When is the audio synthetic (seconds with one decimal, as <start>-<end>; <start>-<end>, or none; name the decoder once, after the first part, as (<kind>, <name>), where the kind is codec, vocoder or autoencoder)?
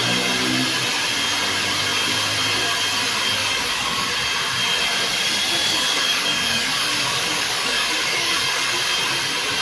3.4-4.1 (codec, DAC); 5.6-8.7